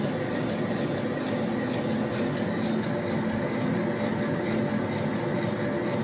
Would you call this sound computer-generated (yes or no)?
no